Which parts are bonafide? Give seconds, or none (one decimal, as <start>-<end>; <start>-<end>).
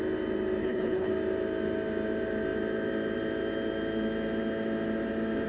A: 0.0-0.6; 1.1-5.5